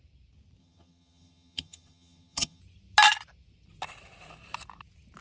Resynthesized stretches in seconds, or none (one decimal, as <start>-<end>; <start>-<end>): 0.6-2.6

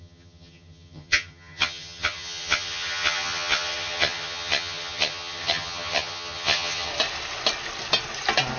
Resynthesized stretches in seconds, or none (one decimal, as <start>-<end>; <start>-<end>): 0.0-6.9

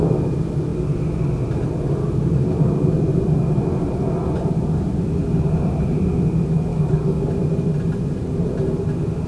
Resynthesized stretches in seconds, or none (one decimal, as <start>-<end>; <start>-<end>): 6.7-7.3

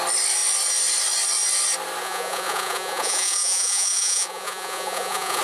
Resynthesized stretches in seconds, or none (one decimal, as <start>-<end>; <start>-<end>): 2.0-5.4

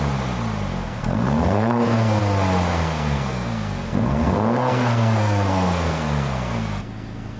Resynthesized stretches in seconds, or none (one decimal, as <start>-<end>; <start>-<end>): 0.7-2.2; 2.7-7.4